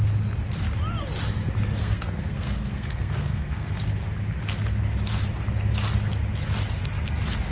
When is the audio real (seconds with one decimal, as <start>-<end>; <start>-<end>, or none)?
0.0-1.8; 3.8-7.5

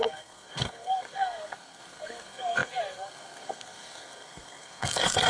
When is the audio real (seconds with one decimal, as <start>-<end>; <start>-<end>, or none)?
none